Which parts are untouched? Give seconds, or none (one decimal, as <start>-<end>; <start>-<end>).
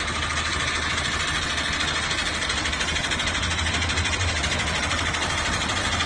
0.0-2.2